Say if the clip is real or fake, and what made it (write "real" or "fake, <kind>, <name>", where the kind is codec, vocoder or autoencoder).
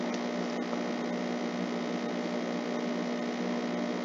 real